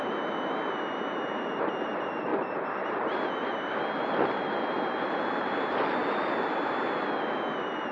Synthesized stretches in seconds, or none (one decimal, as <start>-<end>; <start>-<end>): none